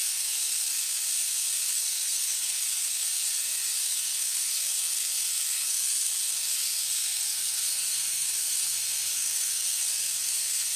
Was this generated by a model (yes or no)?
yes